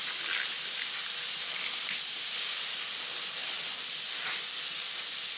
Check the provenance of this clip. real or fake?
real